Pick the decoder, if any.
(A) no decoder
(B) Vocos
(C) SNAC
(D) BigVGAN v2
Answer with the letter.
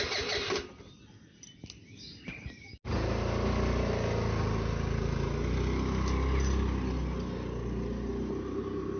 A